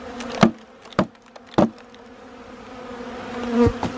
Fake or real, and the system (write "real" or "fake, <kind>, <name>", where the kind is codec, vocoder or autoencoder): real